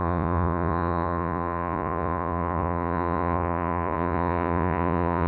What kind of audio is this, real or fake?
fake